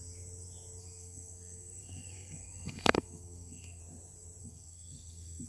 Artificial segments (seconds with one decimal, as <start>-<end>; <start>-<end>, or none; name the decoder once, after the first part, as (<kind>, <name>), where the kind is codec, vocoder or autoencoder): 0.8-3.8 (codec, SNAC); 4.4-5.5